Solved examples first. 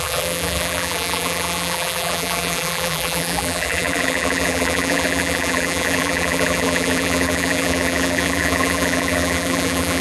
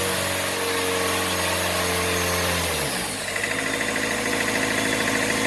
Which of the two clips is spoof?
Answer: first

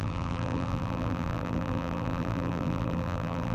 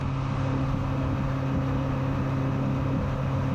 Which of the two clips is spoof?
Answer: first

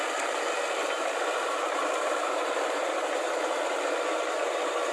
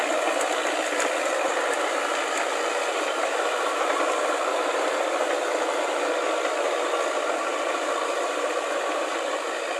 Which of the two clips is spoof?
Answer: first